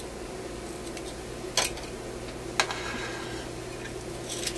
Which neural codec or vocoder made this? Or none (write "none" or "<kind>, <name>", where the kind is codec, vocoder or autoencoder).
none